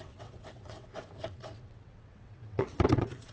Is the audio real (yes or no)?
no